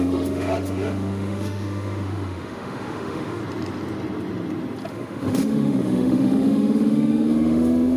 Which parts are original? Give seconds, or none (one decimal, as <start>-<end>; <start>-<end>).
3.4-4.9